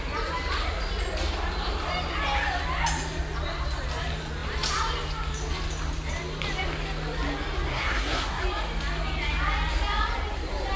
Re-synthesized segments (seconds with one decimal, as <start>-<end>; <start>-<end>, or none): 7.7-8.4